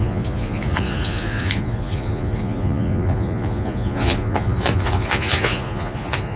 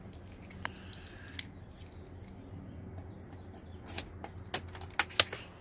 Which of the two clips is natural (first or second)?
second